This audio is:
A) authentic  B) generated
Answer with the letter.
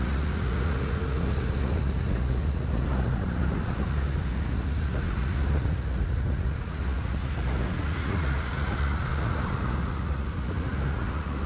B